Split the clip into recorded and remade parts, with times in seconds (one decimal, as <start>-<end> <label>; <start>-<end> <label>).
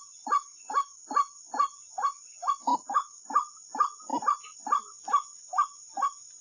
0.0-0.4 recorded; 0.4-1.1 remade; 1.1-2.7 recorded; 2.7-3.3 remade; 3.3-6.4 recorded